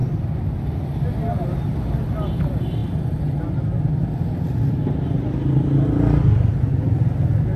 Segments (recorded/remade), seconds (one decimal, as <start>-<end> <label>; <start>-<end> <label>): 0.0-7.6 recorded